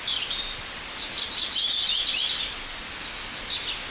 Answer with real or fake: real